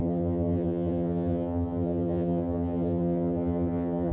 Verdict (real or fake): fake